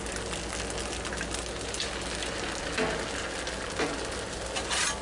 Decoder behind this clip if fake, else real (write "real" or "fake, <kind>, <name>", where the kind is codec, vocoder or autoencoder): real